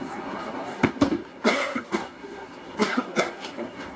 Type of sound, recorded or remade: remade